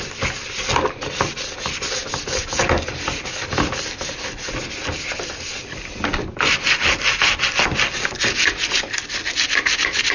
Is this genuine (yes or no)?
yes